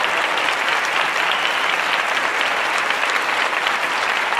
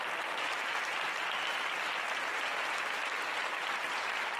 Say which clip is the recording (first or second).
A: second